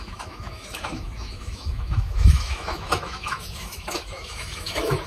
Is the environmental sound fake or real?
fake